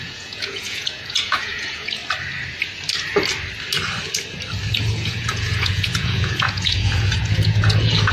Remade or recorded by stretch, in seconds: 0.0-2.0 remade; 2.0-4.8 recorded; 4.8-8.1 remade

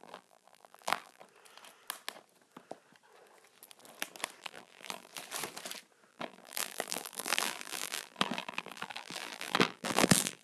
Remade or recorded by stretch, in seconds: 0.0-1.2 remade; 1.2-4.4 recorded; 4.4-5.1 remade; 5.1-6.1 recorded; 6.1-10.4 remade

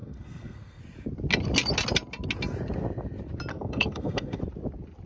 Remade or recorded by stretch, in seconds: 0.0-0.8 remade; 0.8-3.5 recorded; 3.5-4.4 remade; 4.4-5.1 recorded

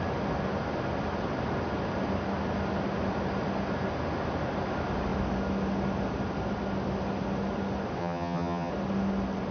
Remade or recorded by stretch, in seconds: 0.0-8.0 recorded; 8.0-8.7 remade; 8.7-9.5 recorded

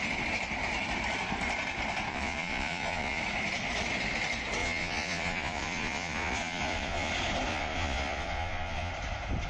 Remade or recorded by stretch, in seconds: 0.0-2.1 recorded; 2.1-3.2 remade; 3.2-4.6 recorded; 4.6-7.1 remade; 7.1-7.5 recorded; 7.5-8.9 remade; 8.9-9.5 recorded

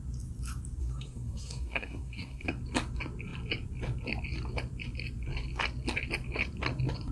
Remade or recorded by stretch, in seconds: 0.0-0.8 recorded; 0.8-2.6 remade; 2.6-7.1 recorded